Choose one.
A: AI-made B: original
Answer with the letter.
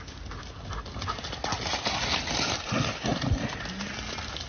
B